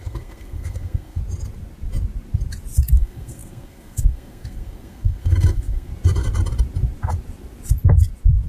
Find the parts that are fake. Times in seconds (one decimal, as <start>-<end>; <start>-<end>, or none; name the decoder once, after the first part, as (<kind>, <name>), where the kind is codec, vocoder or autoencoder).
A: 0.0-1.2 (codec, SNAC); 2.9-5.9